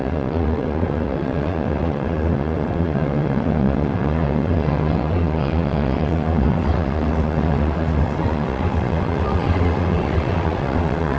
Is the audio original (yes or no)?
no